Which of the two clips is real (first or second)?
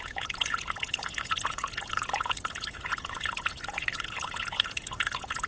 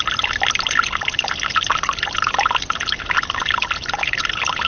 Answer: second